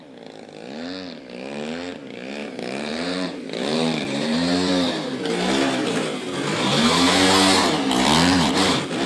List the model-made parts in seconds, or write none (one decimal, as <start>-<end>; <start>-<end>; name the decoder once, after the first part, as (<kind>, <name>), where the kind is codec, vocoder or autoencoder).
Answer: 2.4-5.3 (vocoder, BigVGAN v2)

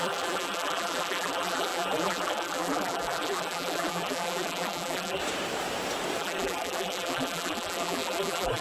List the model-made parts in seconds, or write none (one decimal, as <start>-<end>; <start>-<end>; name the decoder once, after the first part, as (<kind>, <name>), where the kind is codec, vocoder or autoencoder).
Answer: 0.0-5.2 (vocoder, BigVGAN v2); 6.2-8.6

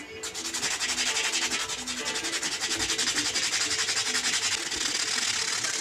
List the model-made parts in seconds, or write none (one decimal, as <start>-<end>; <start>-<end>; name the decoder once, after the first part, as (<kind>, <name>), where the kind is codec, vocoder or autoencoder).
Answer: none